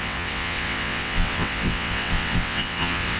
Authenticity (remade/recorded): remade